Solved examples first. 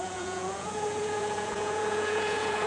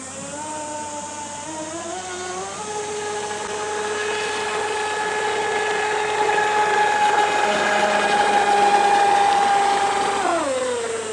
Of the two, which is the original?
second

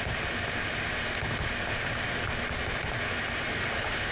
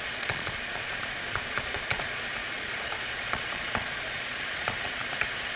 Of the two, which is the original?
first